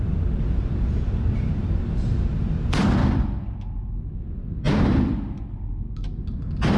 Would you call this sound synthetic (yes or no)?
no